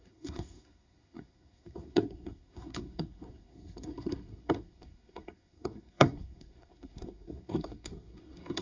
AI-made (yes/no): yes